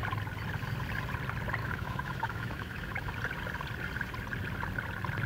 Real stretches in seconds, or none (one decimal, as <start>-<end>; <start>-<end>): 0.0-1.6; 3.1-5.3

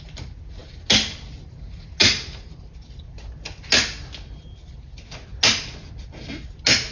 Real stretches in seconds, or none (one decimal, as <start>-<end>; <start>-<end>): 0.0-6.9

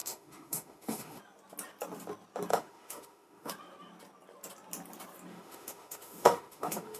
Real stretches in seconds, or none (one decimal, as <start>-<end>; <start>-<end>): 1.2-2.5; 3.5-5.3

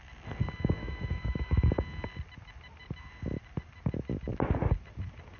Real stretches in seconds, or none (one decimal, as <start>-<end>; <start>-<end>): 0.0-0.8; 1.7-5.4